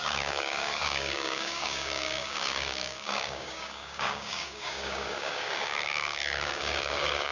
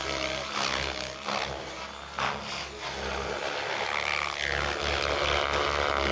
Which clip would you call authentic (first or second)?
second